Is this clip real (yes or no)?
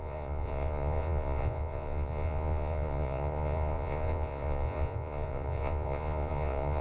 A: no